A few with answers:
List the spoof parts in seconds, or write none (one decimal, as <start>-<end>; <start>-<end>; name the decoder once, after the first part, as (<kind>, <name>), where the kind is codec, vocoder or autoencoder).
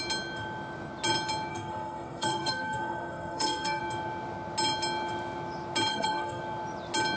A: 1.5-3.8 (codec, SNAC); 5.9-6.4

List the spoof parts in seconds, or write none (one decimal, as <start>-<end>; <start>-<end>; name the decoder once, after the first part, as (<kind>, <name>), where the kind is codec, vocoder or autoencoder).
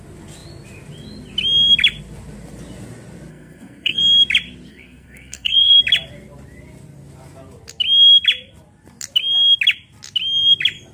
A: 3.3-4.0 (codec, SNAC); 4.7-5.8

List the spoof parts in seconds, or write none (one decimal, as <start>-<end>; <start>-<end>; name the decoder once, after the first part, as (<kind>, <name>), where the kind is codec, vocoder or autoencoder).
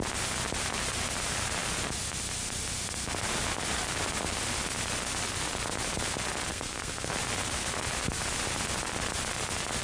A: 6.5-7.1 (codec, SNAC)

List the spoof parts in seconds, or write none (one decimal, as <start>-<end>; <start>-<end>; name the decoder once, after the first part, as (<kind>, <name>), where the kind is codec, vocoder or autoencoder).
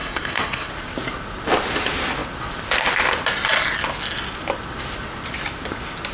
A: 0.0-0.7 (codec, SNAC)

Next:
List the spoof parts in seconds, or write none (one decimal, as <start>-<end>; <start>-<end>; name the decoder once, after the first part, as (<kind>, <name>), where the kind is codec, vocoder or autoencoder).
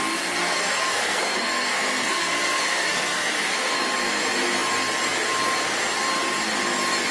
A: 0.4-3.8 (codec, SNAC)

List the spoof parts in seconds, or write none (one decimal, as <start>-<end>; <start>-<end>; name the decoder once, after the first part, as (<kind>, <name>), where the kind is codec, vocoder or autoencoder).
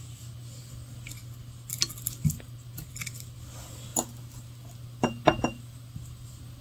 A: none